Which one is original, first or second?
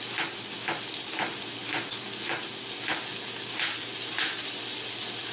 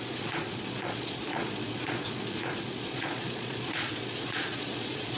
first